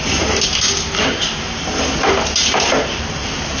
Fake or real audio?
real